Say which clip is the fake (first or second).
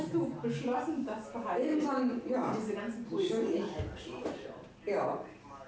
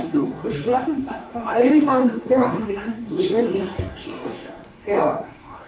second